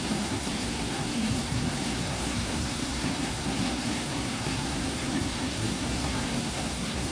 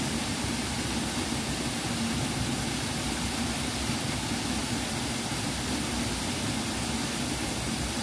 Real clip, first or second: second